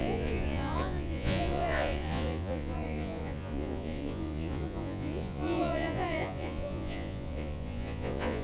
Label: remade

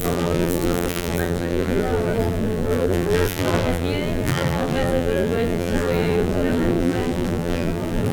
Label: remade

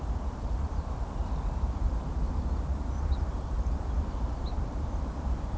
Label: recorded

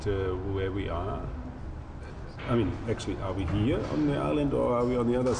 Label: recorded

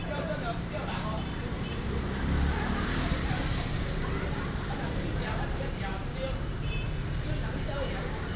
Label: remade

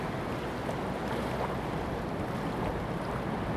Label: recorded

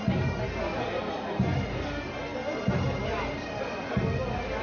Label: recorded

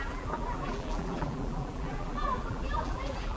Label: remade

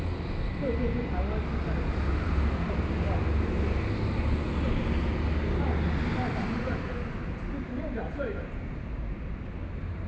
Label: recorded